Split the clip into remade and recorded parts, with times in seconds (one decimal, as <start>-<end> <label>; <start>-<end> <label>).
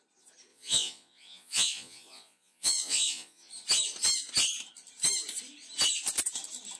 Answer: 0.0-0.5 recorded; 0.5-3.5 remade; 3.5-6.8 recorded